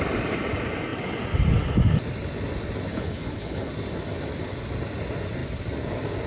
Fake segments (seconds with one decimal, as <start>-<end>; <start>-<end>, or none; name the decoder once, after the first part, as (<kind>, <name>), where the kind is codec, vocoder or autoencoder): 2.9-3.7 (codec, HILCodec)